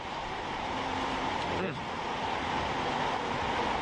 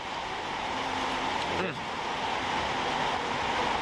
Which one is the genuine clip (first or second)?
second